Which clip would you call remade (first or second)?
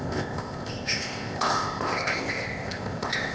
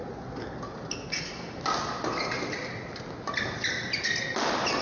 first